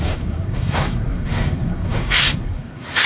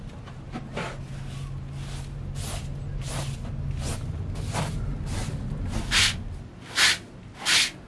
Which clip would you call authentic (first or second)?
second